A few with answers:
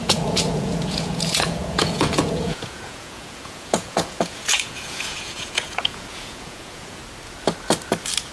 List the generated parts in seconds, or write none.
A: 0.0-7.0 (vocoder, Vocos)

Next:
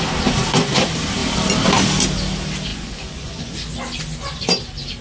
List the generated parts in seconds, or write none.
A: 2.7-3.5 (vocoder, Vocos)

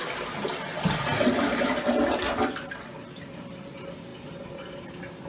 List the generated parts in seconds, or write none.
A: none

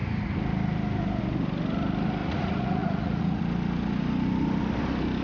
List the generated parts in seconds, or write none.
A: 2.2-3.4 (vocoder, Vocos)